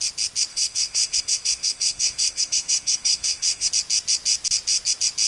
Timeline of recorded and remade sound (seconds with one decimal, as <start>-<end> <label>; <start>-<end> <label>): 0.0-0.5 recorded; 0.5-3.7 remade; 3.7-5.3 recorded